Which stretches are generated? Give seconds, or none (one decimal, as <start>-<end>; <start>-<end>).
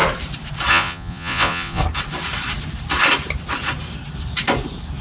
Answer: 0.7-1.8